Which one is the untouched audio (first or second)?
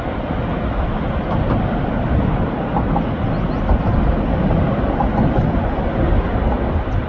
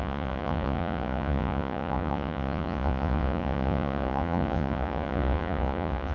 first